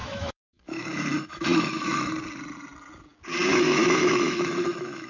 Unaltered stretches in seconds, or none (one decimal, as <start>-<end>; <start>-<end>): 2.1-3.5